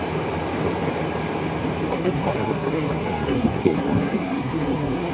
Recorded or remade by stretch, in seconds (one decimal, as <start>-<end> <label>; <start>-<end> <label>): 0.0-1.9 recorded; 1.9-5.1 remade